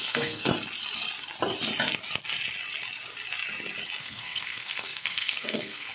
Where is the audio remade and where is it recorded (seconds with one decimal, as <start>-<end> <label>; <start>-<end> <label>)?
0.0-0.5 remade; 0.5-4.0 recorded; 4.0-5.9 remade

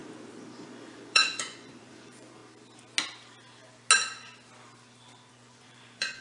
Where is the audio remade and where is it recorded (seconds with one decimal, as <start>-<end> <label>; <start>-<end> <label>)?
0.0-0.5 recorded; 0.5-2.4 remade; 2.4-5.3 recorded; 5.3-6.2 remade